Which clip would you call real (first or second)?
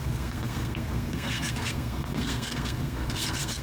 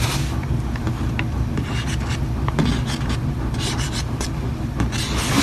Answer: second